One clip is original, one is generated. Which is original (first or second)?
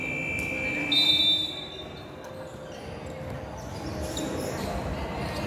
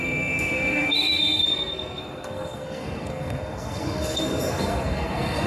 first